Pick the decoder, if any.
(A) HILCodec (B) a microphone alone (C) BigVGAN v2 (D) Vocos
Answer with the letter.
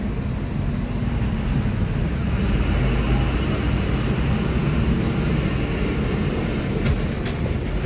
B